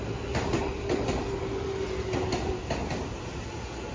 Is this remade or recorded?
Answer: recorded